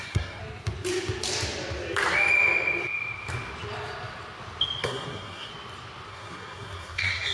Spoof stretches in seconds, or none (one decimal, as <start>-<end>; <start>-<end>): 0.0-0.4; 4.8-5.5; 6.1-7.3